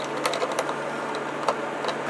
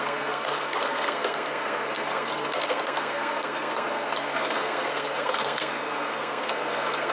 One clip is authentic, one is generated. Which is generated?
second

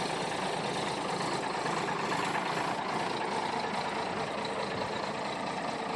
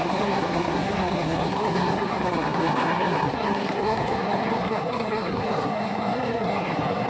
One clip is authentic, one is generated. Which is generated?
second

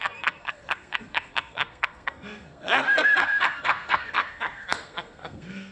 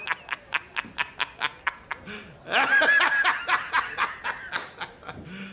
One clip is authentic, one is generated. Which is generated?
first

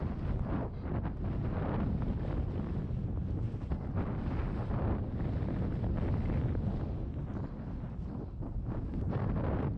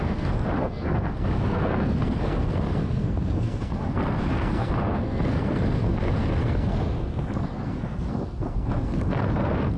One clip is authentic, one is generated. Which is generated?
second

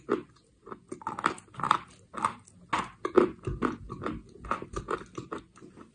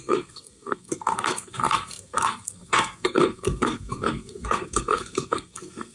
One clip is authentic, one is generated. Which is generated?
second